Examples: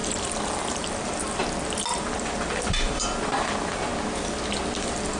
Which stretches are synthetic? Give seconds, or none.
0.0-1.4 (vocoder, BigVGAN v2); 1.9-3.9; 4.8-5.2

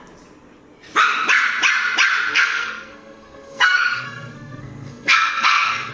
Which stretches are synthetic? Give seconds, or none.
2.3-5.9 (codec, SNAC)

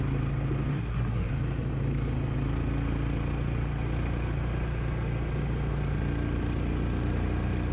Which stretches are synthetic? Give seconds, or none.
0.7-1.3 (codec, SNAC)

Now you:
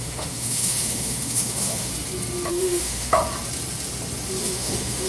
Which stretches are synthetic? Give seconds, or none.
0.0-1.9 (autoencoder, DAC-VAE); 2.5-3.2; 4.4-5.1

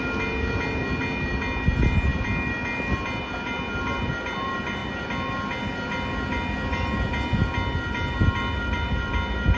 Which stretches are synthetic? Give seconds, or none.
none

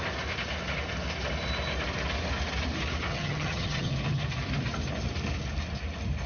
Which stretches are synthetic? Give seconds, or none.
3.1-3.9 (vocoder, HiFi-GAN)

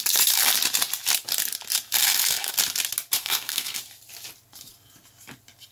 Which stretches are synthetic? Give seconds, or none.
2.0-2.5 (codec, SNAC); 3.2-3.8

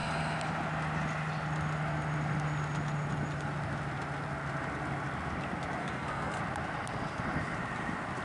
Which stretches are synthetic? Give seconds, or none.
5.8-6.4 (codec, SNAC)